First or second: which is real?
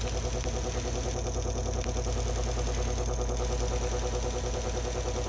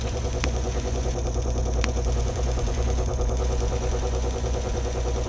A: first